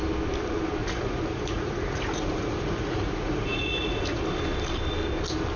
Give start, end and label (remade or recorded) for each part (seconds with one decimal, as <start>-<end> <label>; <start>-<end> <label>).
0.0-0.8 recorded; 0.8-4.2 remade; 4.2-5.6 recorded

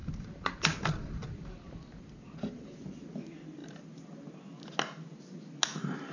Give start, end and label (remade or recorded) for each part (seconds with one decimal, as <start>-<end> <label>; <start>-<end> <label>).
0.0-6.1 recorded

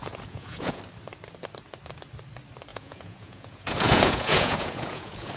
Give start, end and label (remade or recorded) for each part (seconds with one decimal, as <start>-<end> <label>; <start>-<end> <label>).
0.0-0.8 remade; 0.8-2.7 recorded; 2.7-5.4 remade